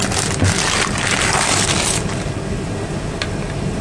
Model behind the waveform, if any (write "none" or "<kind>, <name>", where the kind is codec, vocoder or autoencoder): none